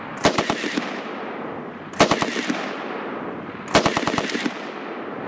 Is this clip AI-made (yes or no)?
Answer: no